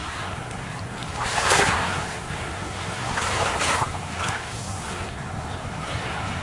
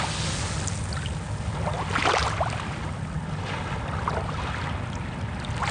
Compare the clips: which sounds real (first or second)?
second